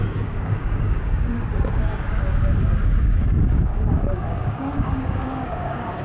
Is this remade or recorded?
remade